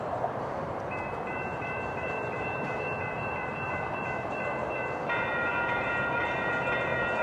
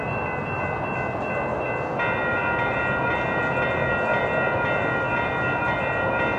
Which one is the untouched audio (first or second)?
second